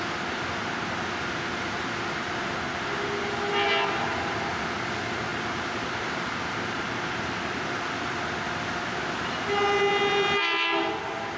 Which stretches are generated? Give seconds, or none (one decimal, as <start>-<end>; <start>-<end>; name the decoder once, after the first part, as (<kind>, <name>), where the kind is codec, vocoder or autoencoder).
5.3-7.6 (vocoder, BigVGAN v2)